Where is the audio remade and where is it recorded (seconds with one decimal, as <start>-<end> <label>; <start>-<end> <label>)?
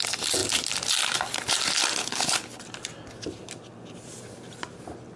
0.0-2.0 recorded; 2.0-2.6 remade; 2.6-5.2 recorded